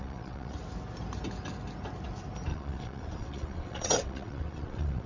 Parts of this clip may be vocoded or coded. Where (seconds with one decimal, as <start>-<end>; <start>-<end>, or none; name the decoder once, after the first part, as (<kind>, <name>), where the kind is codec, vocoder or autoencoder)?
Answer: 0.0-0.6 (vocoder, WaveNeXt); 2.5-5.1